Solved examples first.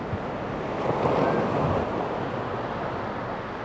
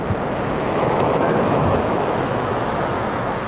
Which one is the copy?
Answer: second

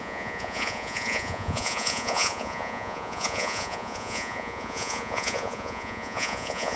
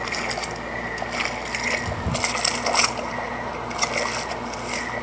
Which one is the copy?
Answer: first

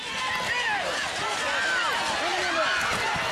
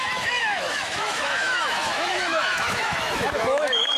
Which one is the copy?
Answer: second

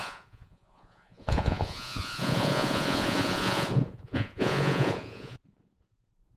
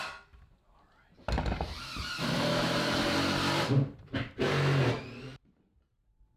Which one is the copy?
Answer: first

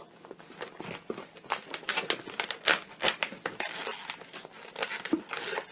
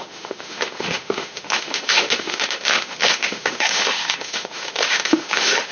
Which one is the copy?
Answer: second